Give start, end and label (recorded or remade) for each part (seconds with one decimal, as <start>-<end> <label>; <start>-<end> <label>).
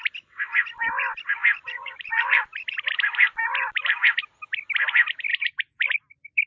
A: 0.0-1.5 recorded; 1.5-4.0 remade; 4.0-5.3 recorded; 5.3-5.9 remade; 5.9-6.5 recorded